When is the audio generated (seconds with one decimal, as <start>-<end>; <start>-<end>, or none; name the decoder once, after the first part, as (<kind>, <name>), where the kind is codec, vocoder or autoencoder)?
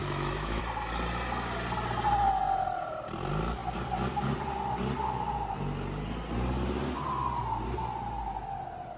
0.0-0.6 (autoencoder, DAC-VAE)